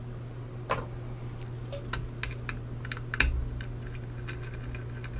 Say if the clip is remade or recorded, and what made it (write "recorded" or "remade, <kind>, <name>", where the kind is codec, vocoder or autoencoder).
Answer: recorded